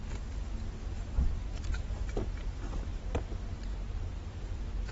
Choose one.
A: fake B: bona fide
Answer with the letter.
B